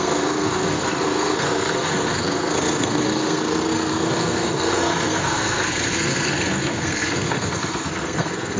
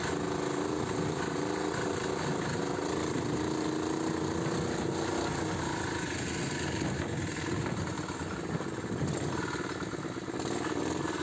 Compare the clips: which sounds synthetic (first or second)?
first